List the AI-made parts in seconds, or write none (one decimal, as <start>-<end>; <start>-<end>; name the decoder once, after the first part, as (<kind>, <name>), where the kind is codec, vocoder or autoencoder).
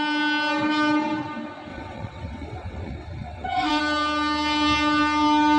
1.7-3.8 (vocoder, WaveNeXt)